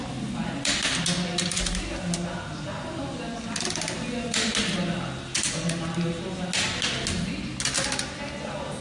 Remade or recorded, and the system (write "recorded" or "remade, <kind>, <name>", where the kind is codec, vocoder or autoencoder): recorded